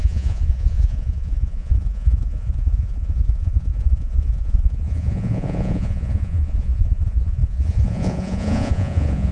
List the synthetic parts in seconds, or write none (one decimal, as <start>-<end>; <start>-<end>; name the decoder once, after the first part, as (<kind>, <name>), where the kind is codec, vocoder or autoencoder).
0.0-9.3 (vocoder, Vocos)